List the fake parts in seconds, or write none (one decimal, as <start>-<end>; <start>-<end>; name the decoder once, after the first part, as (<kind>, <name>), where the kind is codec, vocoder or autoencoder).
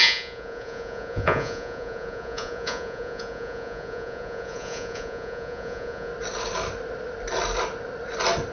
0.0-6.1 (vocoder, Vocos)